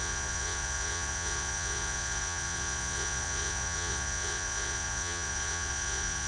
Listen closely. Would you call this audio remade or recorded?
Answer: remade